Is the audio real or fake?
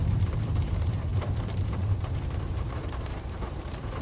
fake